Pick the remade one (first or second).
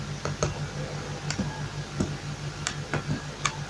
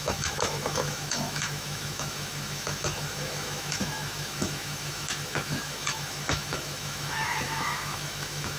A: second